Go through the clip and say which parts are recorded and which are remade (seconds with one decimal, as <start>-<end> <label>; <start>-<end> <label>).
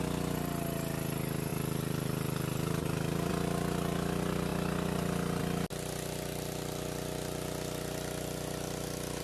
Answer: 0.0-1.5 recorded; 1.5-3.3 remade; 3.3-4.5 recorded; 4.5-5.4 remade; 5.4-9.2 recorded